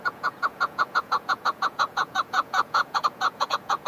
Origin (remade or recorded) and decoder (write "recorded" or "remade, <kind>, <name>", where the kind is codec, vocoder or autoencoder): remade, vocoder, Vocos